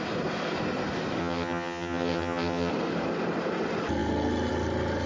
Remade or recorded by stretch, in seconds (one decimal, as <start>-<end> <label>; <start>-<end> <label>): 0.0-1.2 recorded; 1.2-2.7 remade; 2.7-5.1 recorded